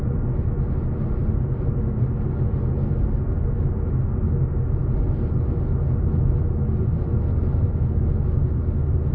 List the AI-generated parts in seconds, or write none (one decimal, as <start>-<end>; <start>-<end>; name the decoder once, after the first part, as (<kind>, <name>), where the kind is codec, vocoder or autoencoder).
none

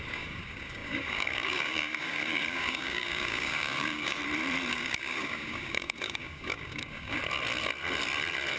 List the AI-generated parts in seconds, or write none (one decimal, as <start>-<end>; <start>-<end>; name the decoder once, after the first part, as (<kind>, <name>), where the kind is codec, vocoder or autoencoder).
0.0-4.2 (codec, DAC); 4.7-7.2

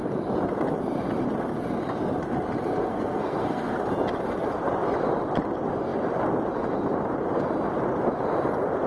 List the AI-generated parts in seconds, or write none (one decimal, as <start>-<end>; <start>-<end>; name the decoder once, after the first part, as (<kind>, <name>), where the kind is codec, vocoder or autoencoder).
2.8-3.8 (codec, SNAC)

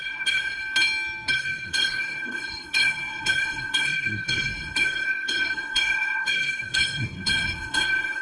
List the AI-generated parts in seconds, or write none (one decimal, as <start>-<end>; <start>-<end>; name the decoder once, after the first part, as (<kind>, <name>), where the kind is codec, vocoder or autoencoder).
0.0-0.6 (codec, SNAC); 1.3-8.2

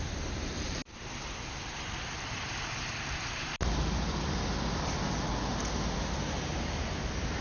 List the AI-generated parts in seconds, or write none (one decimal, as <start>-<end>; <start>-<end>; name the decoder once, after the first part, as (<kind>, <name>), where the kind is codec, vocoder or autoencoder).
none

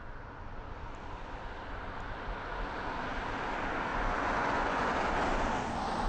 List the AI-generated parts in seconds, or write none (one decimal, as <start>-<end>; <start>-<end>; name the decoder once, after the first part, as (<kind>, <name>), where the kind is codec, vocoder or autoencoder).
3.9-4.9 (vocoder, Vocos)